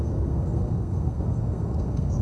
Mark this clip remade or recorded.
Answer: remade